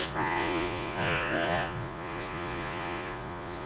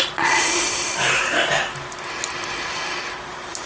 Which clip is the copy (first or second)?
first